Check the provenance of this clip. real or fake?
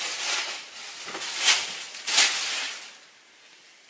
real